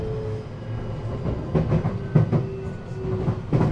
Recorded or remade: recorded